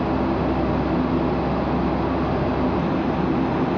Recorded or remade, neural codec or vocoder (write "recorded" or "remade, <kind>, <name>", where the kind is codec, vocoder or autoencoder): recorded